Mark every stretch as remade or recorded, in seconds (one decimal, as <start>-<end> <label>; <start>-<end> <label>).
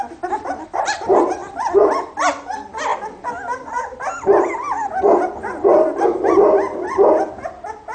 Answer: 0.0-7.9 recorded